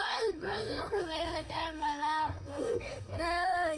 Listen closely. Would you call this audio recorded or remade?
remade